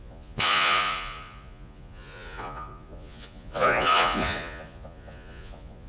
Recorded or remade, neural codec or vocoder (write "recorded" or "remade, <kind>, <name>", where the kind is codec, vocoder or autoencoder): remade, vocoder, Vocos